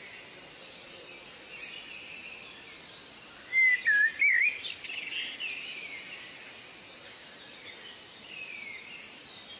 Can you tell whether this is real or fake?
fake